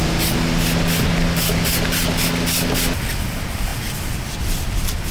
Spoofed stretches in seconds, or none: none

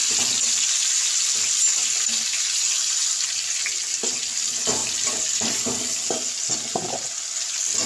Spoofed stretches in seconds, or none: none

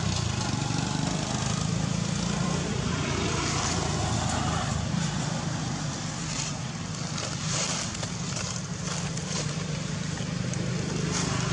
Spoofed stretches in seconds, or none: 2.4-6.6 (vocoder, BigVGAN v2); 7.4-9.5

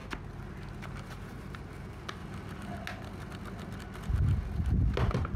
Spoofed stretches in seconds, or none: 0.8-2.2 (vocoder, BigVGAN v2)